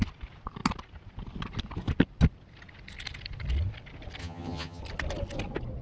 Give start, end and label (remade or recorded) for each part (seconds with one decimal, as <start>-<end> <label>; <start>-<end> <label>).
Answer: 0.0-4.2 recorded; 4.2-4.8 remade; 4.8-5.8 recorded